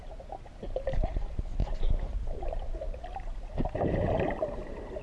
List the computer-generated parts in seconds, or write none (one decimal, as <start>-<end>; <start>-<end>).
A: 1.6-2.4